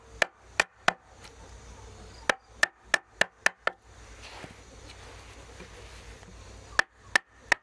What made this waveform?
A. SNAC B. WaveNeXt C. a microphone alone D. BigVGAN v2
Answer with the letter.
C